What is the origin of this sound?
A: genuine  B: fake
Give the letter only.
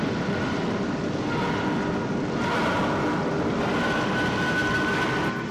A